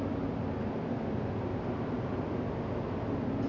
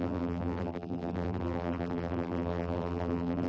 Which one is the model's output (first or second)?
second